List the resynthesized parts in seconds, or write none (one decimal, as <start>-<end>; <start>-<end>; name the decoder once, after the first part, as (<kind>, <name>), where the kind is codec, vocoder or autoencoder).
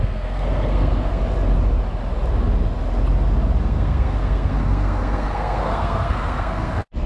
0.0-1.2 (codec, SNAC); 3.6-7.1